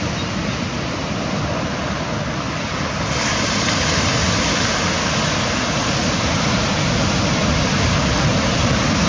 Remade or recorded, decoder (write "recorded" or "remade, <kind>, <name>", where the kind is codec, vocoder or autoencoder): recorded